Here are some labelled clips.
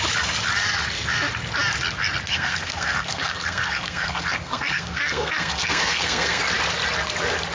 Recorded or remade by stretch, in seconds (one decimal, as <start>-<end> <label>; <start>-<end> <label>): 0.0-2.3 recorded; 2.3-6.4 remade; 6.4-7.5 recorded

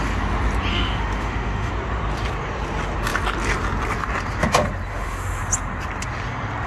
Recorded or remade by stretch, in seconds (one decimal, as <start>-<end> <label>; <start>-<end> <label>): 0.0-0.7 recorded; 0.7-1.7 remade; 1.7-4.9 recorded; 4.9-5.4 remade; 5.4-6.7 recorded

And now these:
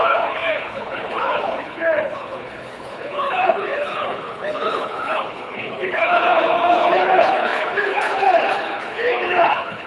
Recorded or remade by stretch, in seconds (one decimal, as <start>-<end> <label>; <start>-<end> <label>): 0.0-9.9 remade

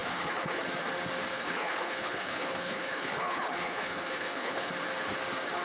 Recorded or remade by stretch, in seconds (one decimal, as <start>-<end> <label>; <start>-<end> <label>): 0.0-0.6 remade; 0.6-1.3 recorded; 1.3-4.7 remade; 4.7-5.6 recorded